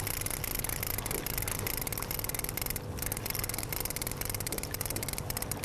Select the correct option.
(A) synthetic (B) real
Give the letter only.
B